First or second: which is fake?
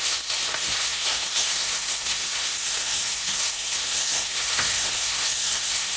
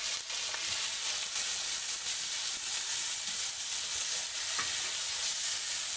first